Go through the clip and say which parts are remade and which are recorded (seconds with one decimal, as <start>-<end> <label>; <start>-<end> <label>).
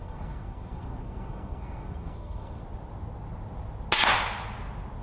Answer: 0.0-2.6 remade; 2.6-5.0 recorded